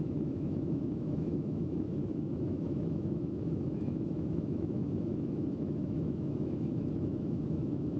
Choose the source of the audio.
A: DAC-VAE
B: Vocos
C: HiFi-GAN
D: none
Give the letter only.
A